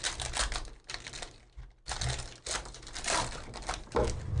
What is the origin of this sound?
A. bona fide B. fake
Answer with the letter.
A